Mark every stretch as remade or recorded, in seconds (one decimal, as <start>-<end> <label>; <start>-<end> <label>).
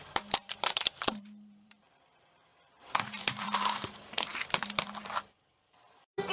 0.0-2.5 remade; 2.5-3.0 recorded; 3.0-6.3 remade